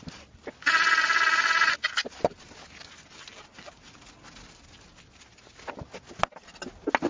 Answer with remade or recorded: recorded